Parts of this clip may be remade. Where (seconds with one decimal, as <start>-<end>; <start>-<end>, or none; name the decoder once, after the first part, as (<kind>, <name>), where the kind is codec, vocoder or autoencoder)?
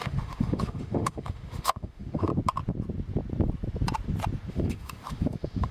0.0-2.3 (autoencoder, DAC-VAE); 4.5-5.7